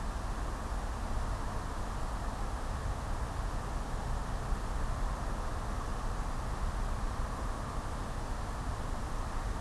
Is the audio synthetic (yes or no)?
no